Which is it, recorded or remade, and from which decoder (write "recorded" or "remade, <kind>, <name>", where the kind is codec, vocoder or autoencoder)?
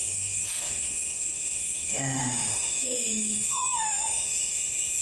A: remade, autoencoder, DAC-VAE